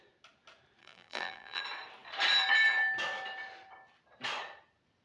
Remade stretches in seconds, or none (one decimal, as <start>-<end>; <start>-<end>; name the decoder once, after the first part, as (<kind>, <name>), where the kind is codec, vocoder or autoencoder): 0.8-1.6 (vocoder, BigVGAN v2)